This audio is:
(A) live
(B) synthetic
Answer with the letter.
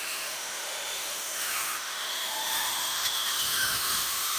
B